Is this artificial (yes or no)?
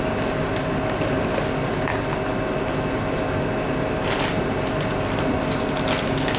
no